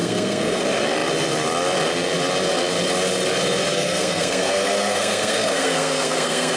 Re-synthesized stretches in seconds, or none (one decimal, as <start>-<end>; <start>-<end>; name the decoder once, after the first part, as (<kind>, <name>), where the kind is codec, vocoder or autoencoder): 0.0-0.6 (codec, SNAC); 3.7-6.6